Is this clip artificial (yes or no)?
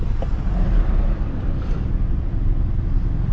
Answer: no